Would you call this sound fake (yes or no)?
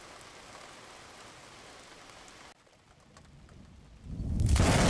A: no